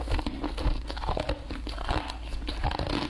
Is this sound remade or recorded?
recorded